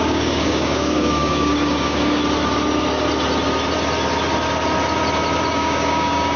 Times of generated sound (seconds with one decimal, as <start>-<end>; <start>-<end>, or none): 0.0-2.2; 5.5-6.4